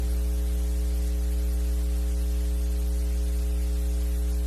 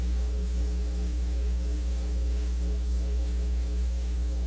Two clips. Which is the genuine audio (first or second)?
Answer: first